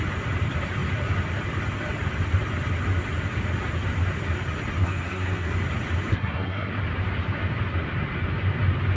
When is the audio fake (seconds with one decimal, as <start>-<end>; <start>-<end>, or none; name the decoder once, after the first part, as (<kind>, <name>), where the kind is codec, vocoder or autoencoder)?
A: 4.8-5.5 (codec, SNAC); 6.1-6.7